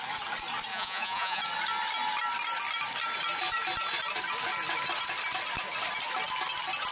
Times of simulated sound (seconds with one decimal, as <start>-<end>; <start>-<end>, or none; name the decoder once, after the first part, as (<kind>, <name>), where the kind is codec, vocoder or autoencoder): 0.7-1.4 (vocoder, Vocos)